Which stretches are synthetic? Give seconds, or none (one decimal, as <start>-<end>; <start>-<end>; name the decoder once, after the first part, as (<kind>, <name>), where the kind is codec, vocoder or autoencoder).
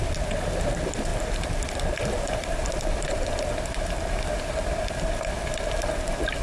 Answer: none